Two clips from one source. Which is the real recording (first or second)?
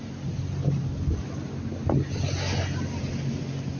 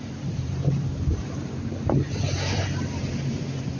first